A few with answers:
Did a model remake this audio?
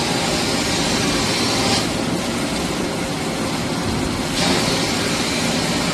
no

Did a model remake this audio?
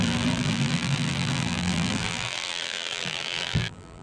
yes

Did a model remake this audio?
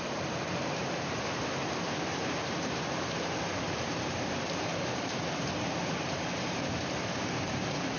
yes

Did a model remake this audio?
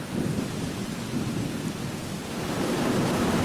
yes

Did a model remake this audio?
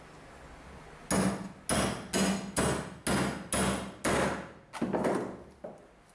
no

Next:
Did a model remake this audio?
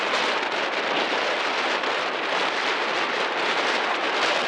no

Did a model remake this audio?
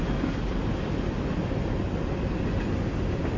no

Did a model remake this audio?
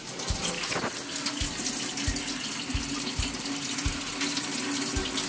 no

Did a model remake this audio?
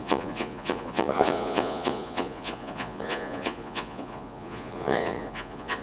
yes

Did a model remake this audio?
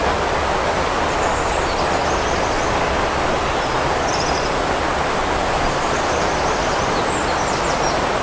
no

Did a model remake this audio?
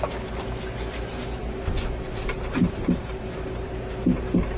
no